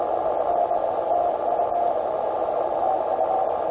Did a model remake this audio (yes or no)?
no